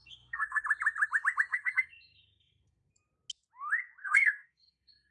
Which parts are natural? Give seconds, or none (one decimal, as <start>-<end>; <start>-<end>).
0.6-1.5; 2.9-4.0